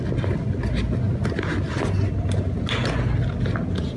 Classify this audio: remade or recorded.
recorded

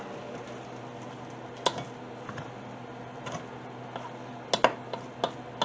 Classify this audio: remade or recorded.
recorded